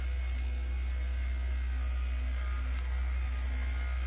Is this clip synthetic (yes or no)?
no